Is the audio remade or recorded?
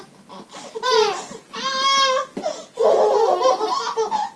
recorded